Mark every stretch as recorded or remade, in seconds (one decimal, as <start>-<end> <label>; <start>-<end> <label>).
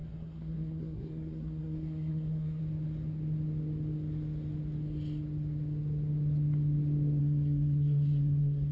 0.0-2.6 remade; 2.6-7.2 recorded; 7.2-8.7 remade